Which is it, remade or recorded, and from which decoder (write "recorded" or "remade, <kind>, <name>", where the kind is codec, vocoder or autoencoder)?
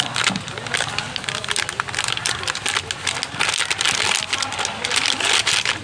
recorded